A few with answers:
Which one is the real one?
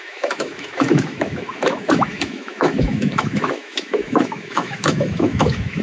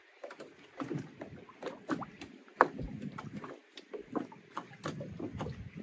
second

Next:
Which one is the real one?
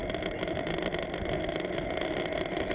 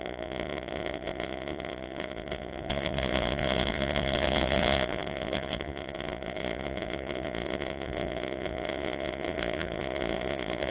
first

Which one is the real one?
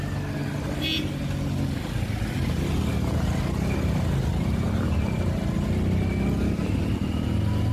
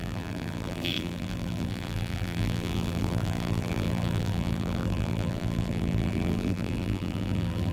first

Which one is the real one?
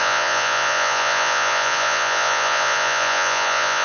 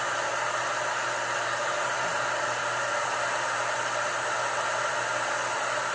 second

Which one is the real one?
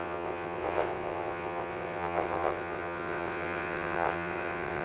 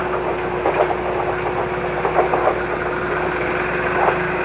second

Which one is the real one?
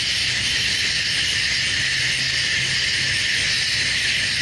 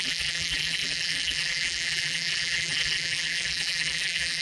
first